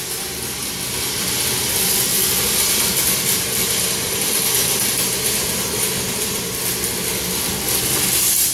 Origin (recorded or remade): recorded